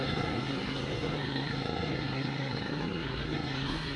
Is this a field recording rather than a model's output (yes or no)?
no